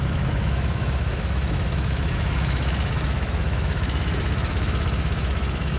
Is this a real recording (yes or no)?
no